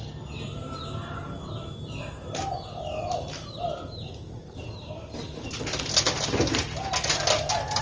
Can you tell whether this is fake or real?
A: real